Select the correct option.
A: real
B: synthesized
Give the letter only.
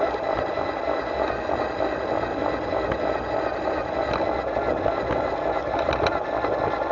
A